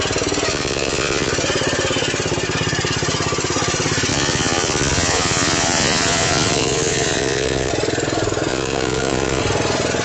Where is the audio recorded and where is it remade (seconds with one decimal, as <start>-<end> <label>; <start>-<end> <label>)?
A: 0.0-0.5 recorded; 0.5-1.3 remade; 1.3-4.1 recorded; 4.1-7.7 remade; 7.7-8.5 recorded; 8.5-9.4 remade; 9.4-10.0 recorded